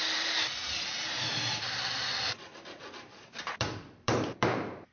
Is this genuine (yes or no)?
no